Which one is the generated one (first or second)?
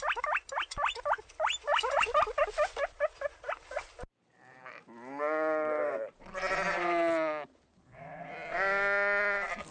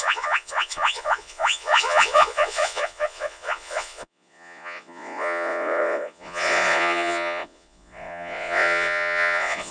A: second